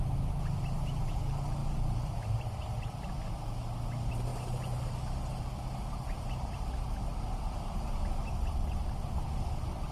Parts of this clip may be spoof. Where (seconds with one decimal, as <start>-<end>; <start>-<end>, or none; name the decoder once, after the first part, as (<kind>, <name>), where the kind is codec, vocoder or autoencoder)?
none